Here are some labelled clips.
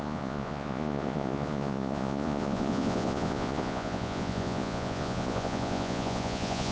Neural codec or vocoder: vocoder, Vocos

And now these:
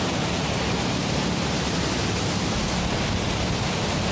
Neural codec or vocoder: none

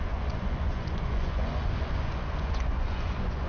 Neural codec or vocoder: vocoder, Vocos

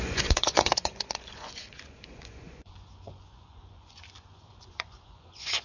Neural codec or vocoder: vocoder, Vocos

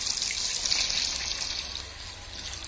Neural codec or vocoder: none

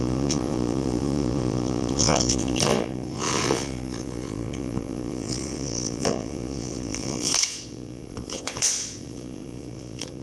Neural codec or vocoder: vocoder, Vocos